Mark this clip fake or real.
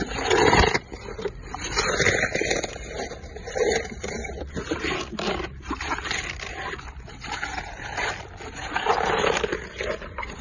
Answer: fake